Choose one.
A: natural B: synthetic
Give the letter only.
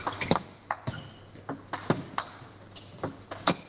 A